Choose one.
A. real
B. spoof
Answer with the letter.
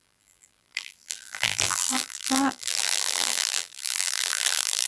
B